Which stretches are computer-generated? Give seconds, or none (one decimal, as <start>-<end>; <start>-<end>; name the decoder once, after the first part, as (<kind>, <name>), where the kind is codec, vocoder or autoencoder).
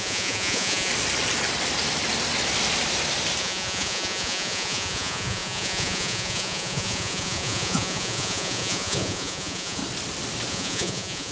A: 0.0-0.9 (vocoder, Vocos); 3.4-9.8; 10.5-11.3